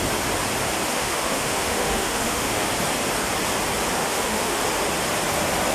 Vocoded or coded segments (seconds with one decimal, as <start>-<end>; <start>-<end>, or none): 0.9-2.7; 4.0-4.6